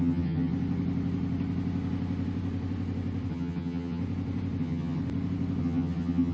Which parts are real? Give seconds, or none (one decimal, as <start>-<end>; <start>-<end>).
0.5-3.3; 4.0-4.6; 5.0-5.6